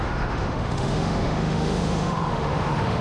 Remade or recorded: remade